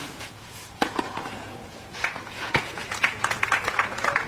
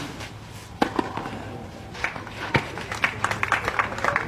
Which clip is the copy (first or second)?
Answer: first